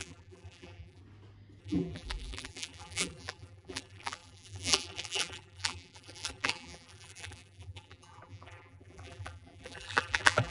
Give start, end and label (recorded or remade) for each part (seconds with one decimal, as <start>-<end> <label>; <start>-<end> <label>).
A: 0.0-1.0 remade; 1.0-1.6 recorded; 1.6-10.5 remade